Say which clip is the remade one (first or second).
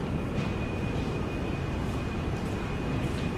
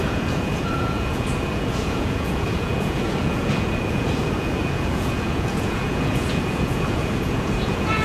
second